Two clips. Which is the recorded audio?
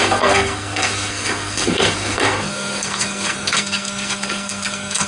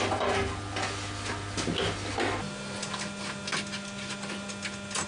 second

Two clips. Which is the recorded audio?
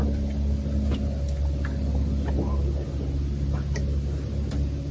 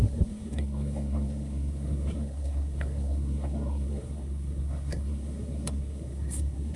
first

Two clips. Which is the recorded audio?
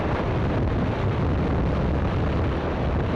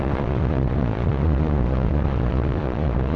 first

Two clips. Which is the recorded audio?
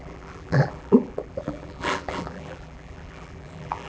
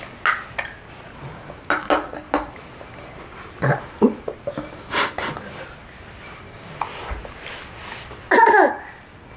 second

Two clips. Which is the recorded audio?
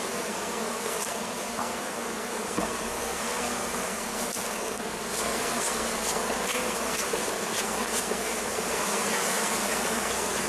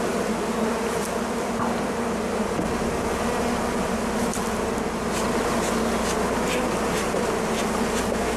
second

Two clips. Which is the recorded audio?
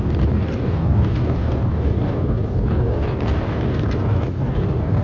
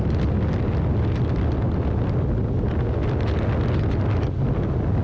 second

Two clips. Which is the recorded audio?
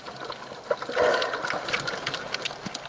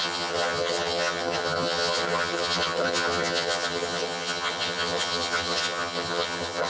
first